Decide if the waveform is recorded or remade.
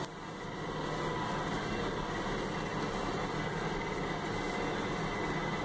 recorded